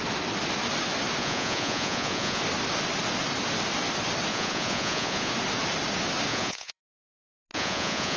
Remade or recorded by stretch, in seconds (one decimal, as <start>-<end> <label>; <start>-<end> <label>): 0.0-1.2 recorded; 1.2-2.4 remade; 2.4-4.3 recorded; 4.3-5.3 remade; 5.3-6.3 recorded; 6.3-6.8 remade; 6.8-7.5 recorded; 7.5-8.2 remade